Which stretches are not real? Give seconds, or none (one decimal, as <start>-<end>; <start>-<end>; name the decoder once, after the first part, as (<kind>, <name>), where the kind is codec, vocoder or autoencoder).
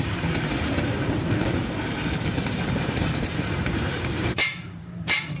0.0-1.6 (vocoder, BigVGAN v2); 2.3-5.4